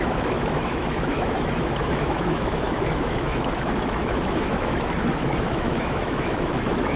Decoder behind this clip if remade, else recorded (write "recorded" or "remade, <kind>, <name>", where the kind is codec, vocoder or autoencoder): remade, autoencoder, DAC-VAE